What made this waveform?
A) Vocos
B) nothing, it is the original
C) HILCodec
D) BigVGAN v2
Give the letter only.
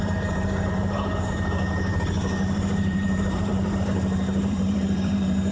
D